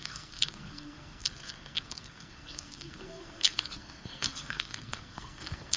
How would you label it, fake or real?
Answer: fake